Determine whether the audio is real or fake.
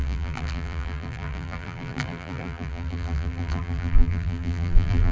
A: fake